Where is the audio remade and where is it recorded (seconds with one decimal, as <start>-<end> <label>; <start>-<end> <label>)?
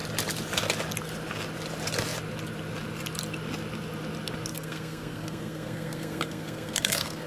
0.0-4.5 recorded; 4.5-7.3 remade